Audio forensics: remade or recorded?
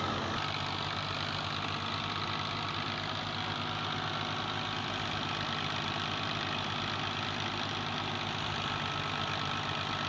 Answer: recorded